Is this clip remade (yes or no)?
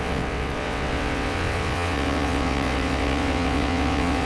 yes